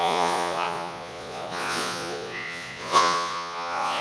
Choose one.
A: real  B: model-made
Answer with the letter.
B